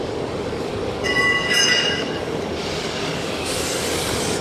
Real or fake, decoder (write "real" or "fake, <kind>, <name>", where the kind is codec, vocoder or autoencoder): fake, codec, DAC